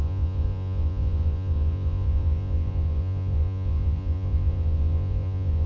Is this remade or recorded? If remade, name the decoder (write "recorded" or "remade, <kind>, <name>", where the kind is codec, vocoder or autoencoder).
remade, vocoder, Vocos